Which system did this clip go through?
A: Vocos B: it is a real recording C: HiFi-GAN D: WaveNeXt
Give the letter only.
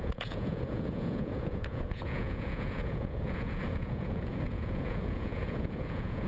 A